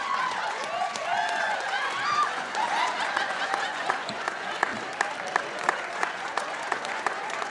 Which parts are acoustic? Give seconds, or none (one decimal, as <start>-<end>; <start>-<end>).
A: 4.7-5.4